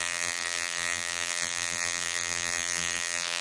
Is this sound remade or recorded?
remade